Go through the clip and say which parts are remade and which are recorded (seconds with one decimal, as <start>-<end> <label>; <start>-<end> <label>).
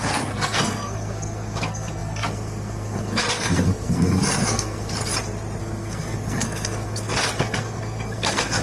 0.0-5.1 remade; 5.1-5.6 recorded; 5.6-8.6 remade